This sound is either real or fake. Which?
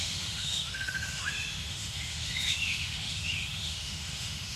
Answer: fake